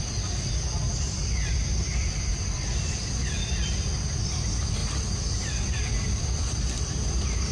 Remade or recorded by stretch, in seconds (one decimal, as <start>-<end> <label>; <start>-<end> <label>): 0.0-7.5 recorded